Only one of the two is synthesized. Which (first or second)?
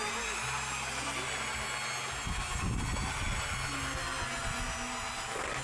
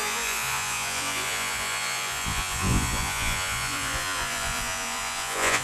second